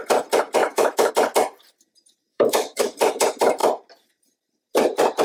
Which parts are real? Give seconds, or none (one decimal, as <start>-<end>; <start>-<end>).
0.0-0.6; 1.1-2.3; 2.8-5.2